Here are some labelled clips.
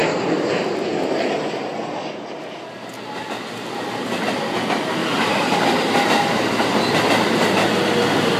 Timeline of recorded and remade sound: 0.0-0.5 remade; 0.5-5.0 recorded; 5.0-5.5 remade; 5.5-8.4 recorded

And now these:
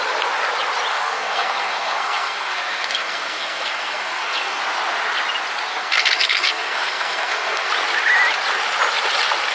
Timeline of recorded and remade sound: 0.0-0.9 recorded; 0.9-4.6 remade; 4.6-5.7 recorded; 5.7-7.7 remade; 7.7-9.5 recorded

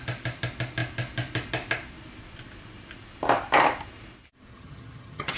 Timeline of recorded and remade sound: 0.0-4.5 recorded; 4.5-5.4 remade